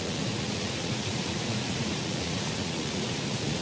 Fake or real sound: fake